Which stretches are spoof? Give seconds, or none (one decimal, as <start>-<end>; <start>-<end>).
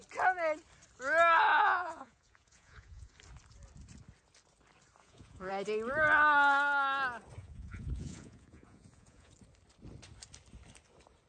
1.5-3.1; 5.0-5.5; 7.4-9.3